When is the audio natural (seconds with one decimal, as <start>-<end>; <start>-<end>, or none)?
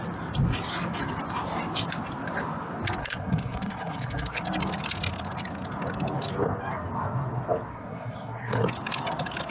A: 0.0-3.0; 4.4-7.7; 8.6-9.5